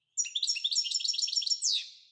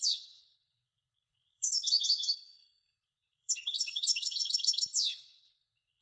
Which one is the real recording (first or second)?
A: first